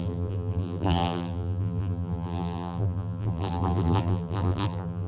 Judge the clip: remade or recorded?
remade